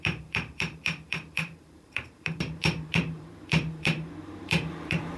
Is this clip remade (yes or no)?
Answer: yes